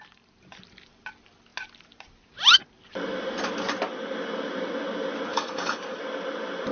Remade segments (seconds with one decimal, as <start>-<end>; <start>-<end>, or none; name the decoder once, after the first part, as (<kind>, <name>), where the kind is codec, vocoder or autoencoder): 5.3-6.0 (codec, DAC)